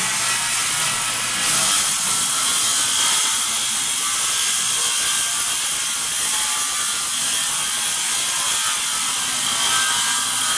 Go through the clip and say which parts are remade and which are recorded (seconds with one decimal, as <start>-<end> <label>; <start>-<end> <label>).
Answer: 0.0-10.6 recorded